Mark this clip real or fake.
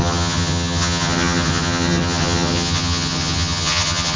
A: fake